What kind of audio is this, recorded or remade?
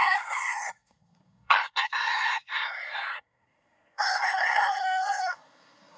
remade